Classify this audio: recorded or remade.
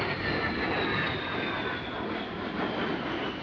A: recorded